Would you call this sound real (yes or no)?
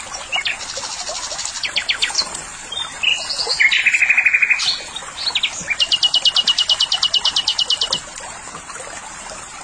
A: yes